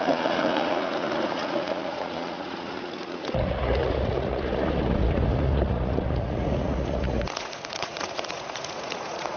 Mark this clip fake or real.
fake